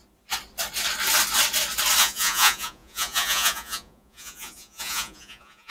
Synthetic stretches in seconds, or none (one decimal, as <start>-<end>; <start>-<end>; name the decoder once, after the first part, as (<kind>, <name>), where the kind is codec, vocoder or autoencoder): 2.0-5.7 (vocoder, Vocos)